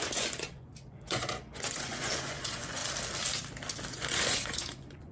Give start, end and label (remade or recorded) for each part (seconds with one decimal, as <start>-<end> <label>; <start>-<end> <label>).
0.0-2.8 remade; 2.8-3.9 recorded; 3.9-5.1 remade